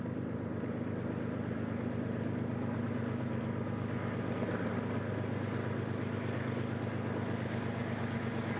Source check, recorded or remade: recorded